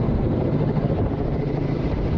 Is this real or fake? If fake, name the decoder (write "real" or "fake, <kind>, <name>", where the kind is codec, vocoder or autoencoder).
fake, vocoder, BigVGAN v2